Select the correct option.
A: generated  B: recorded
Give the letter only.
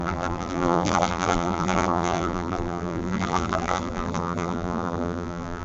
A